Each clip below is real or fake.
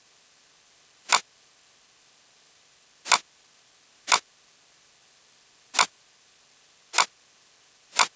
real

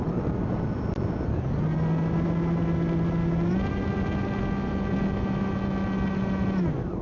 real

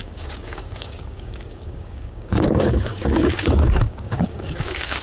fake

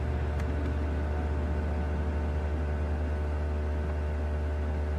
real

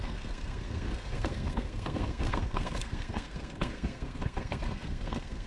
fake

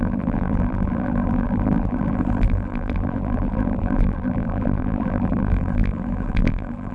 fake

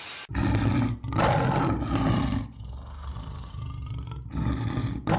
real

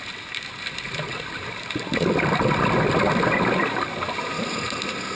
real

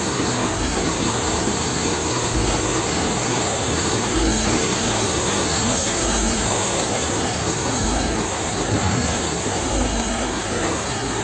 fake